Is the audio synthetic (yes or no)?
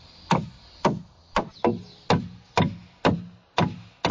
no